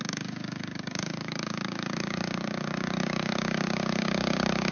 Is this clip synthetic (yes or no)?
yes